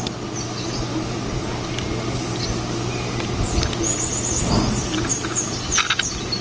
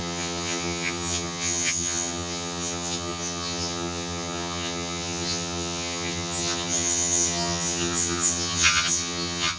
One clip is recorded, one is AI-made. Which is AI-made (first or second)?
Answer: second